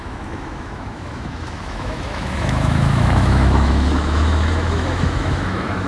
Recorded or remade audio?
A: remade